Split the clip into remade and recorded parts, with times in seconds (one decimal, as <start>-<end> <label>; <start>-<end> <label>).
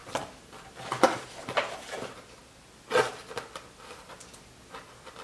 0.0-5.2 recorded